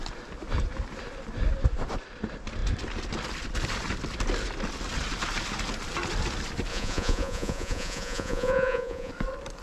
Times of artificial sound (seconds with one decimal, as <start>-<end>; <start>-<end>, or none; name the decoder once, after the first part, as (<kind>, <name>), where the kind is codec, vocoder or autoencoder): 6.7-9.1 (vocoder, Vocos)